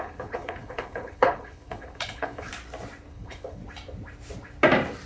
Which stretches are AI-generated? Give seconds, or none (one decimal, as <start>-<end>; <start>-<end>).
0.0-2.5; 3.1-3.6